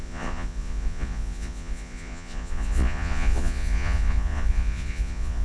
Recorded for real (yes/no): no